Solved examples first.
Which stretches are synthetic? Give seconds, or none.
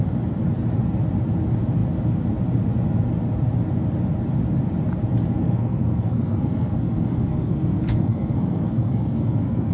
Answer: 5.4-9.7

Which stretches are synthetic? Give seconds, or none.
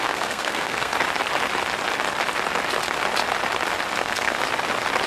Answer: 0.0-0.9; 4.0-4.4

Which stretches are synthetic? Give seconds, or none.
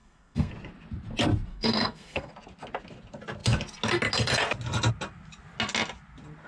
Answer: 0.0-0.5; 1.5-2.3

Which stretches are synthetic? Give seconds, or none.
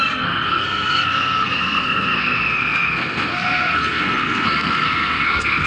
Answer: 0.0-5.7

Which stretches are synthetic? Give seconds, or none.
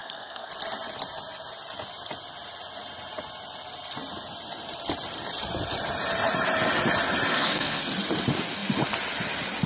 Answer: 0.0-0.5; 7.3-7.8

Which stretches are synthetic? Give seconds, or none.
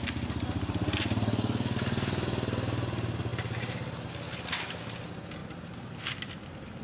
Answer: none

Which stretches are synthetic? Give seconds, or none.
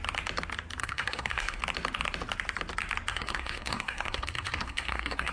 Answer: 0.8-1.6; 3.1-5.3